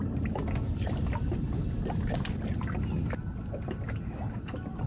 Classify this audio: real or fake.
real